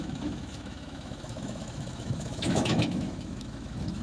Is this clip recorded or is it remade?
remade